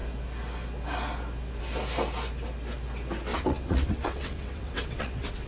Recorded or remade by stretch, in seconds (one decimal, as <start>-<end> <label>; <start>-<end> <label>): 0.0-3.3 recorded; 3.3-5.5 remade